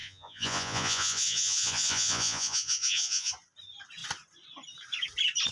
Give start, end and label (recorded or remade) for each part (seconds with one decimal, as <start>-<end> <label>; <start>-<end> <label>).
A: 0.0-3.3 remade; 3.3-5.5 recorded